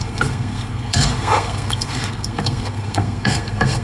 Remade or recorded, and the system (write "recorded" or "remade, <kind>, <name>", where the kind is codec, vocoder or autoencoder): remade, codec, SNAC